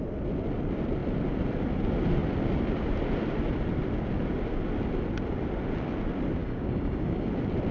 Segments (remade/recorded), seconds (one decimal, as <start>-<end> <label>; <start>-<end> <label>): 0.0-6.4 recorded; 6.4-7.3 remade; 7.3-7.7 recorded